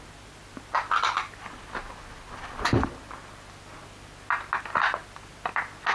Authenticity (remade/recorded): recorded